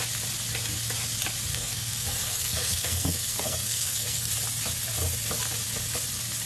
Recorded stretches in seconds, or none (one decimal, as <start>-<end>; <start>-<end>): 0.0-1.5; 4.3-6.5